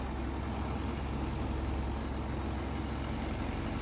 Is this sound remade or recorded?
recorded